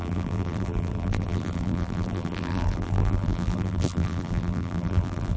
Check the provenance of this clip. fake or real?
fake